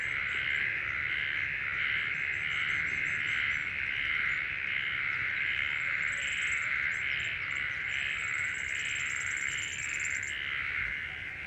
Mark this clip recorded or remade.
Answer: recorded